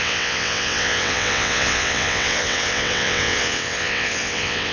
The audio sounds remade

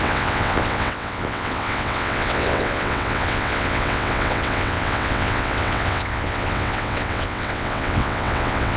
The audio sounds remade